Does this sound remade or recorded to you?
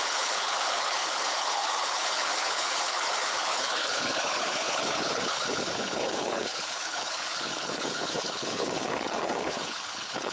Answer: remade